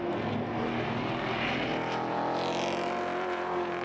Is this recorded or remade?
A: recorded